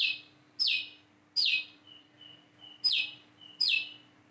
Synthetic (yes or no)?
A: no